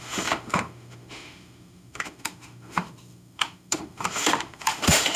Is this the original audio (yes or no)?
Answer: no